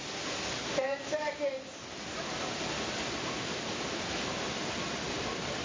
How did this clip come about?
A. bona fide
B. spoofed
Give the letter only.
A